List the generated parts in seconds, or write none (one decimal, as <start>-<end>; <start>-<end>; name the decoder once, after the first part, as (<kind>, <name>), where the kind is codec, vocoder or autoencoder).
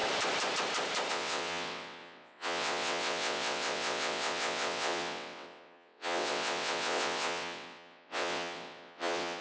1.1-9.4 (vocoder, WaveNeXt)